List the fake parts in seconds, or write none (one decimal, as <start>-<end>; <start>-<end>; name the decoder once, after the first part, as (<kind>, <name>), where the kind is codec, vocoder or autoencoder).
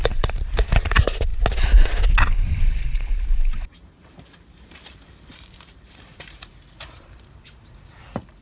0.0-1.3 (vocoder, BigVGAN v2); 2.6-8.4